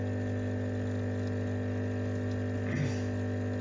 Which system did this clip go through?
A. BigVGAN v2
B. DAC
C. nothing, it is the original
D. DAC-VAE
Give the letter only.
C